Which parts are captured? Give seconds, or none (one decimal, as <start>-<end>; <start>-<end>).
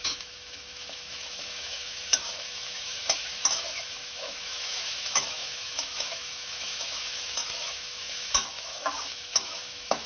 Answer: none